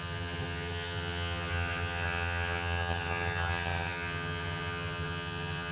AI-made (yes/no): yes